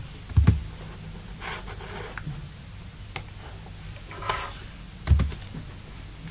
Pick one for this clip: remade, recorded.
recorded